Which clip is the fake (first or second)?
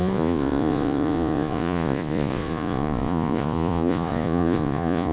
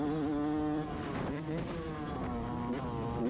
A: first